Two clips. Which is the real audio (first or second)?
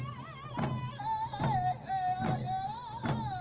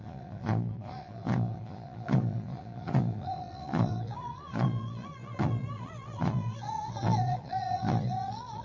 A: first